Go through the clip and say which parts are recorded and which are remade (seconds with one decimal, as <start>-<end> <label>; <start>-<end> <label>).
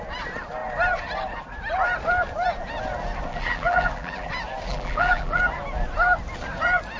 0.0-3.3 recorded; 3.3-4.3 remade; 4.3-4.7 recorded; 4.7-5.4 remade; 5.4-7.0 recorded